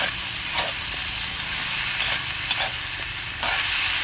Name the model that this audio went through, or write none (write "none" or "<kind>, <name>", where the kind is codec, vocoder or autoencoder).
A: none